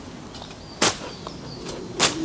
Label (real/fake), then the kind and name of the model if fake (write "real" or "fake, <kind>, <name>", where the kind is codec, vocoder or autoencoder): real